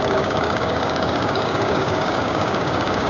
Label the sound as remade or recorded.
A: remade